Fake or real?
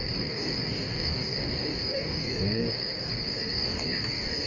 fake